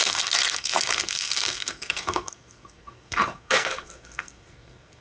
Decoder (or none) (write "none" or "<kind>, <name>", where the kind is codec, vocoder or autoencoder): codec, SNAC